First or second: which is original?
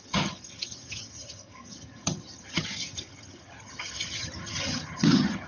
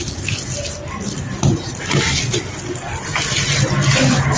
second